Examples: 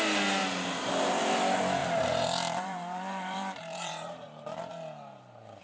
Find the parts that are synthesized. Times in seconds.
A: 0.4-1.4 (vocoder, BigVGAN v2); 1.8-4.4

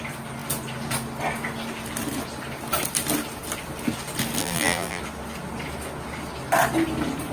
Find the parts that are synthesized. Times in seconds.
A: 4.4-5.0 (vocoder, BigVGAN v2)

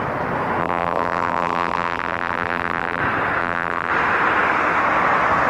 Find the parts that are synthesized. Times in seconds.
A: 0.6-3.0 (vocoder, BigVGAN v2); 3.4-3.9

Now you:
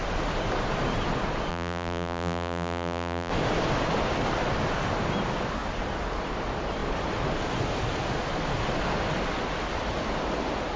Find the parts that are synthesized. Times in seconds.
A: 1.5-3.3 (vocoder, BigVGAN v2)

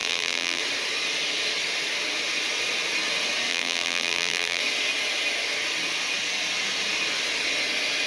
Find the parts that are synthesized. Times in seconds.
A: 0.0-0.6 (vocoder, BigVGAN v2); 3.5-4.6

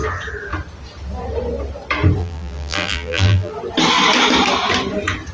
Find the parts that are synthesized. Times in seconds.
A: 2.2-3.5 (vocoder, BigVGAN v2)

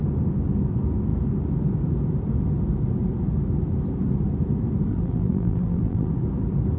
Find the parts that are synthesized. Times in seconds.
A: 4.9-6.1 (vocoder, BigVGAN v2)